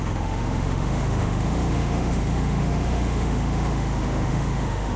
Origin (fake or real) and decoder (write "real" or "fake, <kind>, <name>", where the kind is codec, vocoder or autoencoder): fake, autoencoder, DAC-VAE